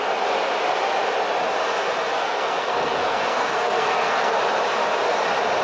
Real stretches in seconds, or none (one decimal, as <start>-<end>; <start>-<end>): 0.0-2.2; 4.4-5.6